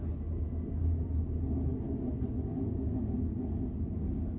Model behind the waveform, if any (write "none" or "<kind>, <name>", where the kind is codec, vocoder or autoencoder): none